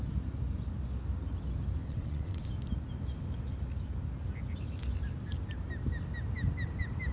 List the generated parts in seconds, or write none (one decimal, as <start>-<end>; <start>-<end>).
1.8-2.4